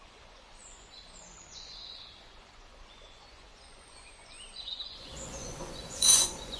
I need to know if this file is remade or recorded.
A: remade